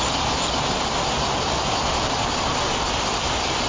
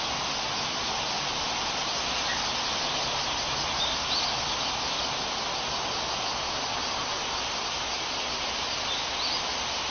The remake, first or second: first